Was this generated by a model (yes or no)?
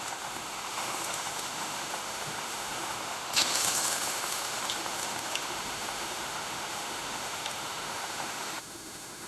yes